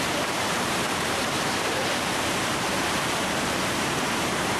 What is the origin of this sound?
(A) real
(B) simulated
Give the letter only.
B